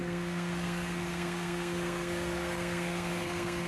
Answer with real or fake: fake